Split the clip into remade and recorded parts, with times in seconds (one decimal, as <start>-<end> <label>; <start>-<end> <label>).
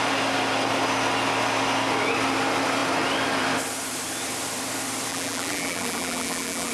0.0-5.1 recorded; 5.1-6.7 remade